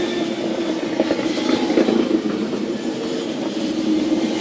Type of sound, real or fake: fake